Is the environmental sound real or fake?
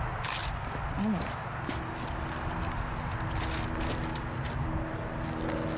real